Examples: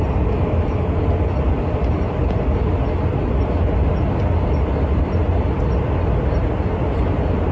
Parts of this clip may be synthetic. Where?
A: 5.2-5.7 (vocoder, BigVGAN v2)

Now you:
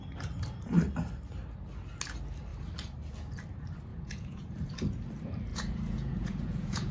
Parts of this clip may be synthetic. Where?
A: 3.9-4.7 (vocoder, Vocos); 5.5-6.9

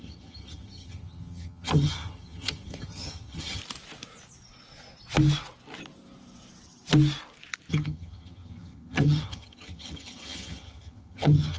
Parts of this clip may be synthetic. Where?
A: 0.0-3.6 (vocoder, HiFi-GAN); 7.7-11.6